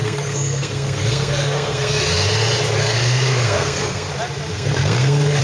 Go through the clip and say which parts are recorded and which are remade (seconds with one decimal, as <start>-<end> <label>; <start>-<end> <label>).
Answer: 0.0-2.0 remade; 2.0-2.8 recorded; 2.8-4.1 remade; 4.1-4.5 recorded; 4.5-5.4 remade